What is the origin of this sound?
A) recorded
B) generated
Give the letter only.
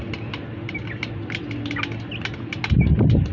A